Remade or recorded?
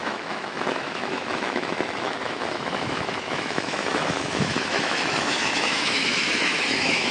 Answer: remade